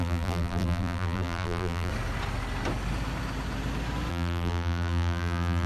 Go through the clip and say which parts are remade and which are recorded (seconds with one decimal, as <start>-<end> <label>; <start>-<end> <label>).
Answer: 0.0-1.9 remade; 1.9-4.1 recorded; 4.1-5.7 remade